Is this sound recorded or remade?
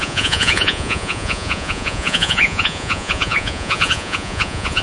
remade